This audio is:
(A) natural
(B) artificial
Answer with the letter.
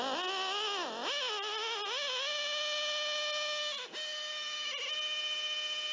A